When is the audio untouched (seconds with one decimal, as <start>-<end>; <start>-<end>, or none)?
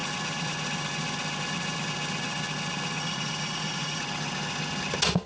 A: 0.0-3.0; 4.0-5.3